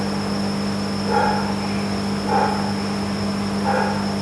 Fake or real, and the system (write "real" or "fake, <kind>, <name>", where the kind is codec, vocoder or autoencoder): real